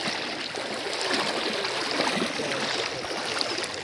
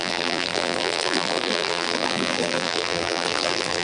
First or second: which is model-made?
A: second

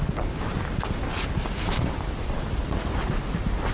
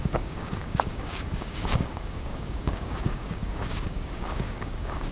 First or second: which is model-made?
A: second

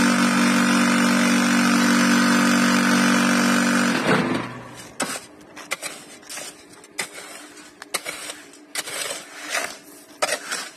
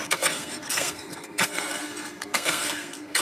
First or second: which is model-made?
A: second